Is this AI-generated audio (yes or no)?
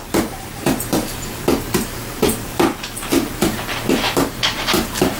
yes